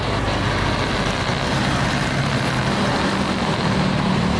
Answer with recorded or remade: recorded